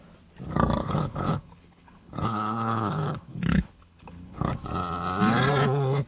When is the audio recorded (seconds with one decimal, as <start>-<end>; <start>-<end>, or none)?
0.0-0.8; 4.5-6.1